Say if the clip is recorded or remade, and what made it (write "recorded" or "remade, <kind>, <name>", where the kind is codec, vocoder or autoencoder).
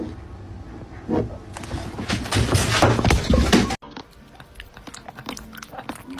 recorded